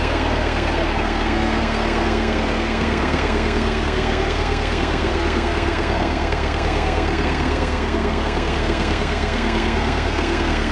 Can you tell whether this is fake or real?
fake